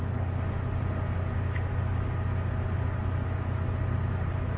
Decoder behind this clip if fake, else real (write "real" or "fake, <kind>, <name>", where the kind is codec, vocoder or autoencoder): real